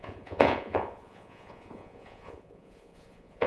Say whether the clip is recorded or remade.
remade